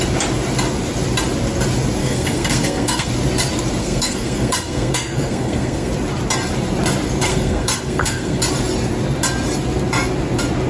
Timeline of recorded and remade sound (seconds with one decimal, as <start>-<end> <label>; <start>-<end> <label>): 0.0-2.0 recorded; 2.0-3.1 remade; 3.1-3.8 recorded; 3.8-5.9 remade; 5.9-7.3 recorded; 7.3-8.4 remade; 8.4-10.7 recorded